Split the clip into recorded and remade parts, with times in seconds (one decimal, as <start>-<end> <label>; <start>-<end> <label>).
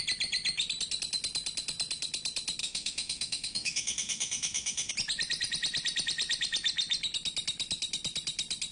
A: 0.0-2.6 recorded; 2.6-4.9 remade; 4.9-8.7 recorded